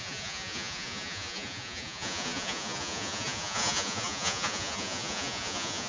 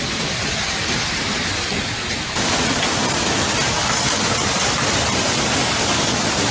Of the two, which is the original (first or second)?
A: second